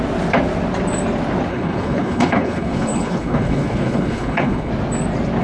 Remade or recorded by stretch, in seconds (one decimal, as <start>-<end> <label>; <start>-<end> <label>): 0.0-1.5 recorded; 1.5-4.7 remade; 4.7-5.4 recorded